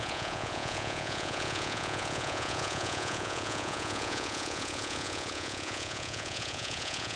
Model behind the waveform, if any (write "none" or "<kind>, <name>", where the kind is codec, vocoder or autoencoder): vocoder, Vocos